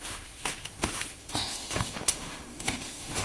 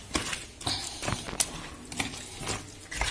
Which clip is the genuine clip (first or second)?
second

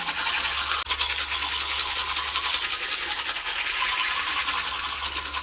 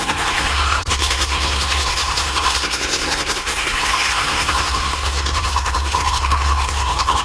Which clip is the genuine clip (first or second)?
first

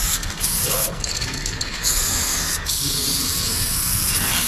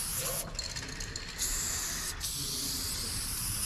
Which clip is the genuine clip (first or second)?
second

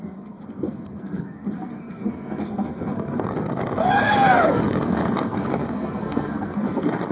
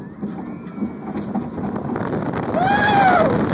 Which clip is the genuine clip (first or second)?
second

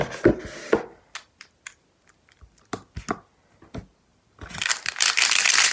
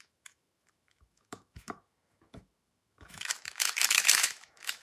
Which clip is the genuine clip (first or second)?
first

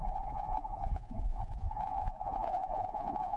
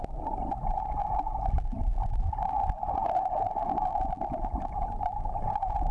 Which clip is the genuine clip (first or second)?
second